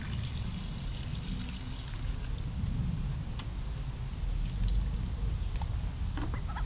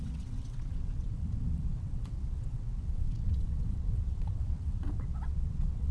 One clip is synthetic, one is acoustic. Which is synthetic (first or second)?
second